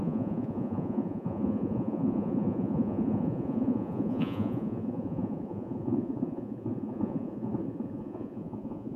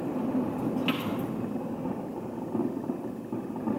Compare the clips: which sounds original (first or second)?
second